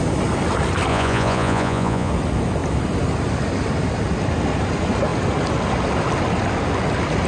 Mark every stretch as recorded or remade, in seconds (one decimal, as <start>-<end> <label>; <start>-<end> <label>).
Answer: 0.0-0.9 recorded; 0.9-2.1 remade; 2.1-7.3 recorded